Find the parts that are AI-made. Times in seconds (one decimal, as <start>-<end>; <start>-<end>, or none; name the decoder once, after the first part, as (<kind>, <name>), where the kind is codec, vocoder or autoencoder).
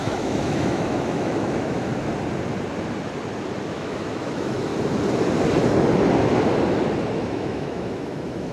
0.0-1.9 (autoencoder, DAC-VAE); 3.7-4.7; 7.1-8.5